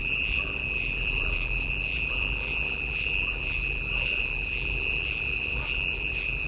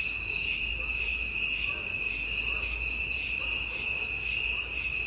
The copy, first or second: first